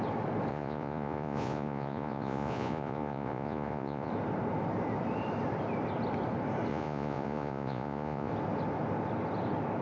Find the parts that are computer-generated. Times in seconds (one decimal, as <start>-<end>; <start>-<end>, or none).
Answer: 0.5-4.1; 6.7-8.3